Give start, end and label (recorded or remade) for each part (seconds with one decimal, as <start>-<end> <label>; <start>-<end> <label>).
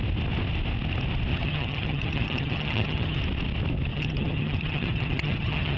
0.0-1.3 recorded; 1.3-3.2 remade; 3.2-3.9 recorded; 3.9-5.8 remade